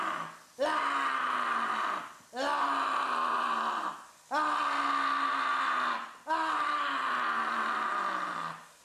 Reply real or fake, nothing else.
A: real